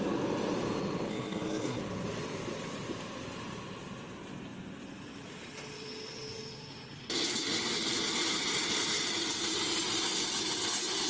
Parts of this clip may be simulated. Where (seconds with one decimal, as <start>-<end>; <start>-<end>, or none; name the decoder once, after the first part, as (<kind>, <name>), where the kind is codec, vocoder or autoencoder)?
1.1-1.8 (codec, SNAC)